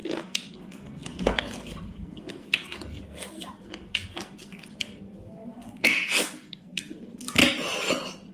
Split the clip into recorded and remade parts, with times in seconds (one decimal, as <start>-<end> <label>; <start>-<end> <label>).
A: 0.0-7.4 remade; 7.4-8.3 recorded